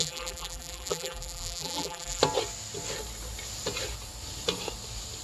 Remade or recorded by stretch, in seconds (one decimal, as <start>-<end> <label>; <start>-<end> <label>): 0.0-2.2 remade; 2.2-5.2 recorded